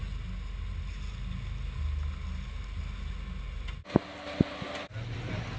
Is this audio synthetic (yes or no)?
no